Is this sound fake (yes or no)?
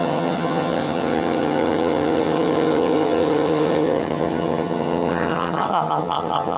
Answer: yes